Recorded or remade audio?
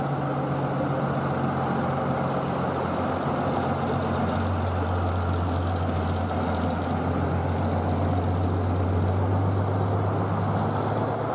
recorded